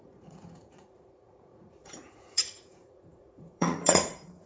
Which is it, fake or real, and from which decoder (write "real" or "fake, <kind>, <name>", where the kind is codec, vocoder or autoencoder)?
fake, vocoder, Vocos